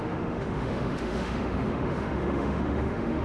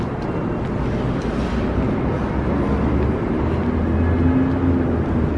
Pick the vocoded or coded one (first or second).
first